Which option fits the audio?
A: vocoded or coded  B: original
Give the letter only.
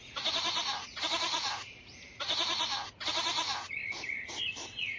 A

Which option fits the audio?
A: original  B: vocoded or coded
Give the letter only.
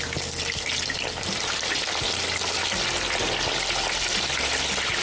A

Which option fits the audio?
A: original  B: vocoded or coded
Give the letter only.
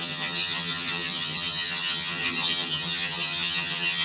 B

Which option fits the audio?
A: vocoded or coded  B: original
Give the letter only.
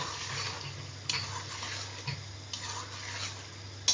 B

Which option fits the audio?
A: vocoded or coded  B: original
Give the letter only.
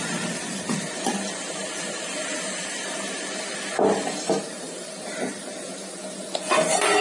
A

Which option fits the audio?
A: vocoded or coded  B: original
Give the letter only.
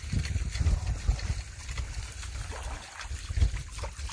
B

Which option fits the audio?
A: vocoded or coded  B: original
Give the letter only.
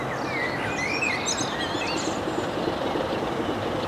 B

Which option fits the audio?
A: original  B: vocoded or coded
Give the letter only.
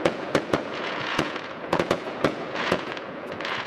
B